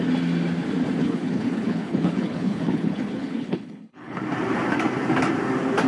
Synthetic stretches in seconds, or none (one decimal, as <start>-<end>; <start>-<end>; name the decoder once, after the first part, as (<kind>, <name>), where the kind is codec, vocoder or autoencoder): 1.0-4.2 (codec, HILCodec)